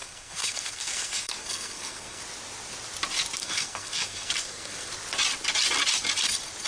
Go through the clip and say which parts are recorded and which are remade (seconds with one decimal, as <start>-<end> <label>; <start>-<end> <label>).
0.0-2.2 remade; 2.2-3.4 recorded; 3.4-4.9 remade; 4.9-6.7 recorded